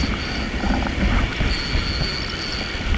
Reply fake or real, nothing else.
real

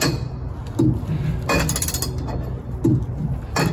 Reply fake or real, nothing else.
real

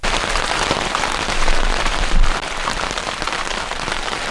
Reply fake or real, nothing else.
fake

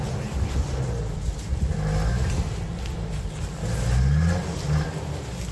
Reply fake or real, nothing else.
real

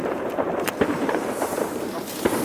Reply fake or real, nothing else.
fake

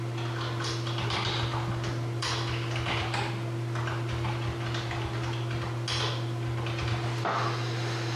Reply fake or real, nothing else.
real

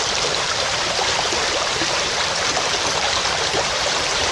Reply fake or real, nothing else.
fake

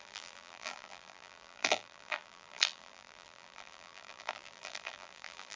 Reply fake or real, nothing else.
fake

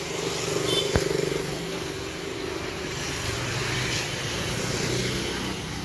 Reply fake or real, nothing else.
real